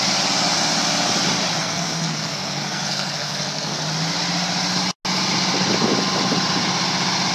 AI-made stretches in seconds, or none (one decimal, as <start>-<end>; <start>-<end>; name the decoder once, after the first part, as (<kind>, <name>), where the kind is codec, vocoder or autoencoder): 1.6-3.8 (codec, SNAC)